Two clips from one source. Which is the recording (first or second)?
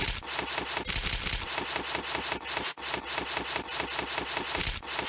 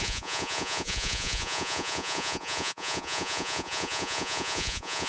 first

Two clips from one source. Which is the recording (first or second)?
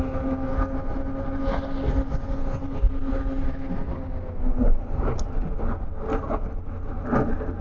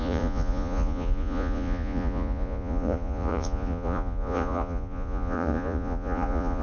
first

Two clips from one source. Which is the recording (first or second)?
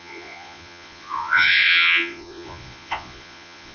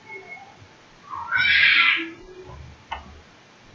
second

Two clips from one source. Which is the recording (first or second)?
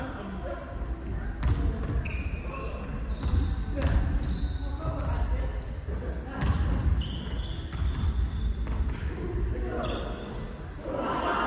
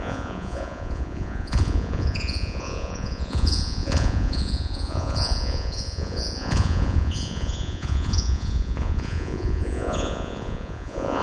first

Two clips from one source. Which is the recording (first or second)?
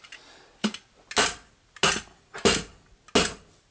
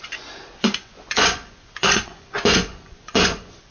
first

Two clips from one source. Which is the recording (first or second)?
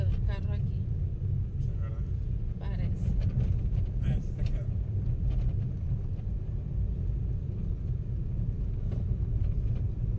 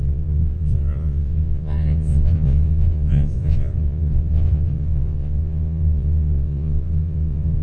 first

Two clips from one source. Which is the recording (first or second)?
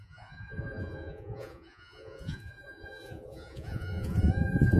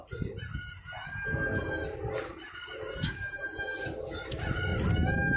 second